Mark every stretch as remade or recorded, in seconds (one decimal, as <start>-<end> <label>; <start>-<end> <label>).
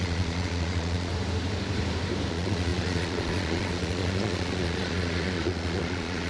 0.0-1.1 remade; 1.1-2.3 recorded; 2.3-6.3 remade